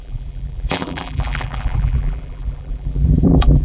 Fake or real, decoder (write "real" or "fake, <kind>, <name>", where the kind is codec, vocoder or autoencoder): fake, vocoder, BigVGAN v2